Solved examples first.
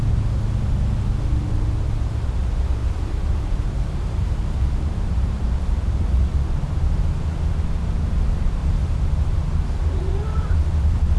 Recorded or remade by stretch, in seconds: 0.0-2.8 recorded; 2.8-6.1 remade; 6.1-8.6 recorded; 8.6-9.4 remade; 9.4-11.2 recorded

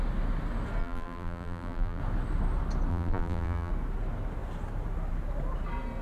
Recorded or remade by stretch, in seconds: 0.0-0.8 recorded; 0.8-2.0 remade; 2.0-2.9 recorded; 2.9-3.7 remade; 3.7-6.0 recorded

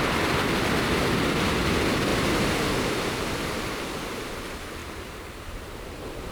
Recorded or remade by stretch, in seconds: 0.0-4.8 recorded; 4.8-6.3 remade